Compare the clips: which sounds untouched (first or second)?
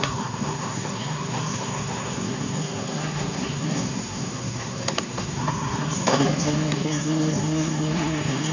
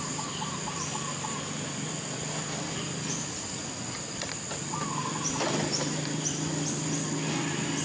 second